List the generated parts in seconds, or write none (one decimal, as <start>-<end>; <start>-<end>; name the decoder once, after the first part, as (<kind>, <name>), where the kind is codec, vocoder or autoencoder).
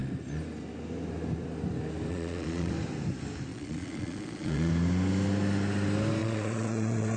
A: 2.1-2.7 (vocoder, Vocos); 3.5-4.7; 6.2-7.2